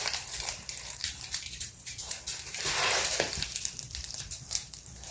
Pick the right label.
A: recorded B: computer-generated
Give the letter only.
B